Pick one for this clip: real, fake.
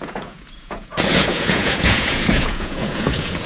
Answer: fake